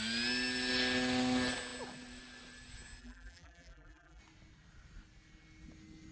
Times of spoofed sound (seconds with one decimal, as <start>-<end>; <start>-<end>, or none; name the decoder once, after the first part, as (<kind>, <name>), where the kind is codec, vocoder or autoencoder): 3.0-4.2 (vocoder, BigVGAN v2)